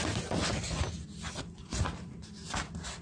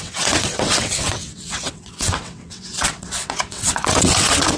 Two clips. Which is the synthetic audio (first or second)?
second